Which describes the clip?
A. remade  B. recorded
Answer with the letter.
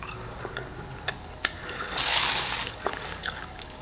A